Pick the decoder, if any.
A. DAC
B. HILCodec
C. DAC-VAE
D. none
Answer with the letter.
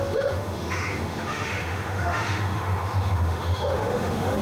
C